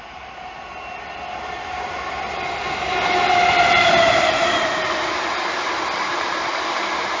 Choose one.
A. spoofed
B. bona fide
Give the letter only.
B